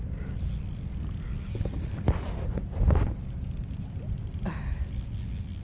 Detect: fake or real real